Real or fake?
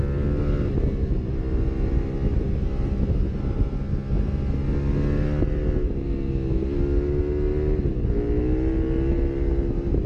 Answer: real